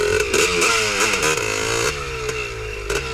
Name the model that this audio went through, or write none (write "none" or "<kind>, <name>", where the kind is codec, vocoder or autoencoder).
none